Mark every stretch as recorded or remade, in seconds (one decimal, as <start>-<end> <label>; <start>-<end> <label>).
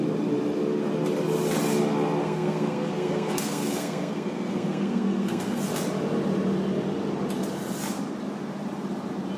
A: 0.0-2.2 recorded; 2.2-5.6 remade; 5.6-9.4 recorded